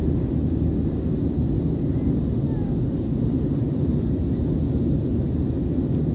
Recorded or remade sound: recorded